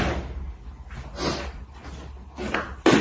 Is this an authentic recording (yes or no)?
yes